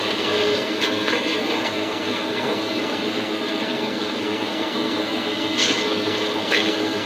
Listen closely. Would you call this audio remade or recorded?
remade